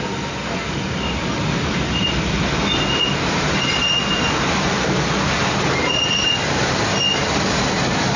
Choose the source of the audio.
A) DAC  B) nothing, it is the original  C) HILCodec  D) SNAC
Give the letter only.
B